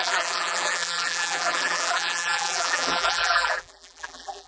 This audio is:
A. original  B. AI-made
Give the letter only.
B